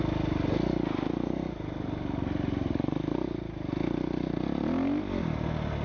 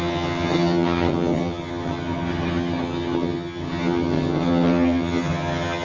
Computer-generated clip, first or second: second